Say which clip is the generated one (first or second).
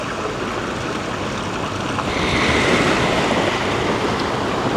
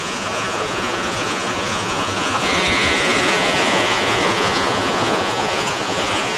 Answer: second